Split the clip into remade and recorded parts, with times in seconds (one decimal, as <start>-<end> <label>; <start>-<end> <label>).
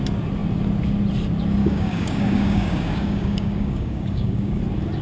0.0-1.6 recorded; 1.6-4.6 remade; 4.6-5.0 recorded